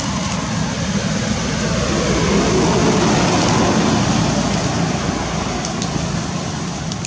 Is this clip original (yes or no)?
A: yes